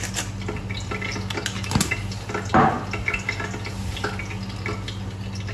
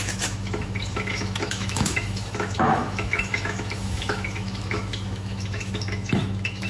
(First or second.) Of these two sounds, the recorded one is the first